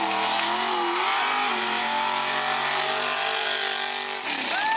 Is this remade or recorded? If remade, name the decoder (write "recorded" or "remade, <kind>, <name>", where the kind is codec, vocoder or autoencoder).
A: recorded